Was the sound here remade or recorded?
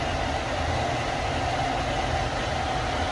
recorded